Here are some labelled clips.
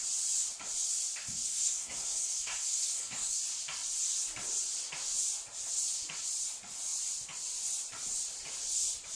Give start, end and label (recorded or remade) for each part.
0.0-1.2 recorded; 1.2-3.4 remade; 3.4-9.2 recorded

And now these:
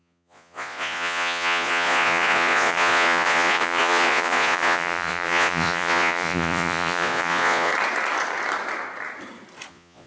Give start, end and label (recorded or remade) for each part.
0.0-7.7 remade; 7.7-9.7 recorded; 9.7-10.1 remade